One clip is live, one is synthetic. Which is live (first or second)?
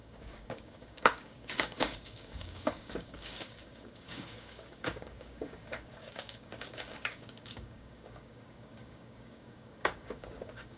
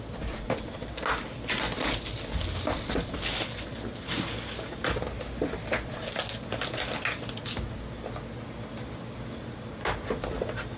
second